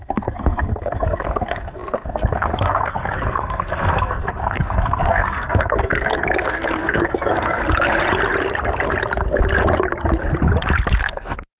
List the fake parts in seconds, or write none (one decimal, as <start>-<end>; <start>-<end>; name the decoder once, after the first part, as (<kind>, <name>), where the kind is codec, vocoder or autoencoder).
0.0-7.6 (codec, SNAC); 11.0-11.6